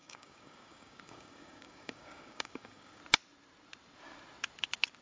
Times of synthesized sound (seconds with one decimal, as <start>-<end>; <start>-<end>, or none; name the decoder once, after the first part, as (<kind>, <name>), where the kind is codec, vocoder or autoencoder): 0.0-3.0 (codec, DAC)